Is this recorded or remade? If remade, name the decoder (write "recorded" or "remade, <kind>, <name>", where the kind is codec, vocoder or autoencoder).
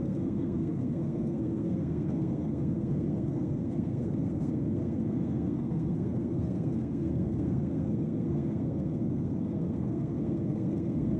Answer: remade, codec, SNAC